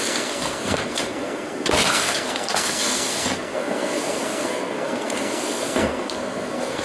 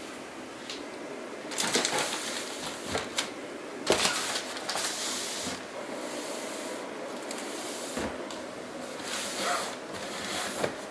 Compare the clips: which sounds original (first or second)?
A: second